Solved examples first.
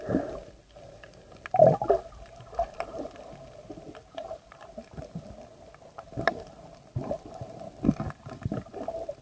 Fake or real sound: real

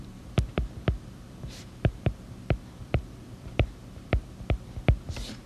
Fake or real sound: fake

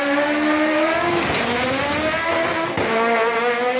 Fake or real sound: real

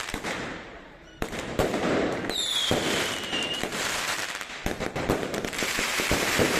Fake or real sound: fake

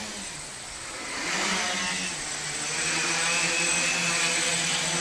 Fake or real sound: real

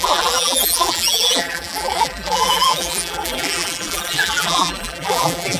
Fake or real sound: fake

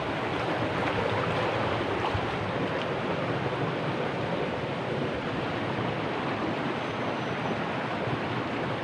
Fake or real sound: real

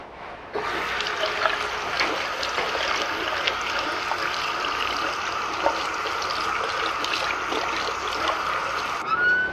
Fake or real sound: real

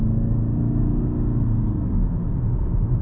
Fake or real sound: real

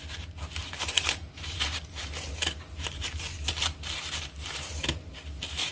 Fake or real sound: fake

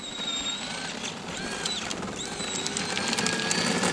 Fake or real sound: real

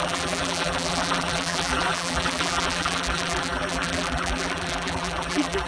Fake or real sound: fake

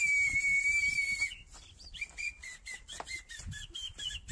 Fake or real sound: real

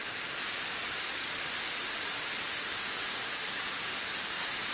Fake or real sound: fake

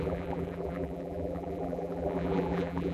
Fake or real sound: fake